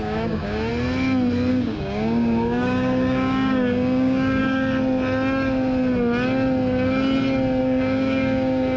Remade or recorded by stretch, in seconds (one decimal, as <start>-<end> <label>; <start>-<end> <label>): 0.0-0.7 remade; 0.7-1.5 recorded; 1.5-4.4 remade; 4.4-7.6 recorded; 7.6-8.8 remade